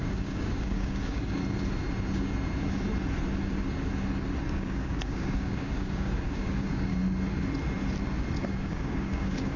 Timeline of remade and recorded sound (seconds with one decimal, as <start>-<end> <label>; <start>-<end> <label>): 0.0-1.4 remade; 1.4-4.5 recorded; 4.5-6.9 remade; 6.9-8.4 recorded; 8.4-9.6 remade